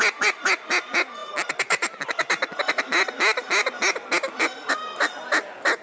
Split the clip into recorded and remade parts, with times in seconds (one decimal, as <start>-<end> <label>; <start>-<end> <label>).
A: 0.0-5.8 recorded